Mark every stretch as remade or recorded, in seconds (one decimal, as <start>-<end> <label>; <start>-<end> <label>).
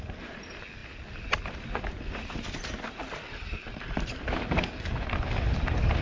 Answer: 0.0-6.0 remade